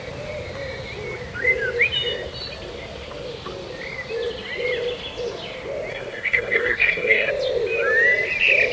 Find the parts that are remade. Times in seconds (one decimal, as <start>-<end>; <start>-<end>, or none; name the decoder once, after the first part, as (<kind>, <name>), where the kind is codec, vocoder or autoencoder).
5.9-7.3 (codec, SNAC)